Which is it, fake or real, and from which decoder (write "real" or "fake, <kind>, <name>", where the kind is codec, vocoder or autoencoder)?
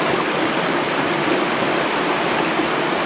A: real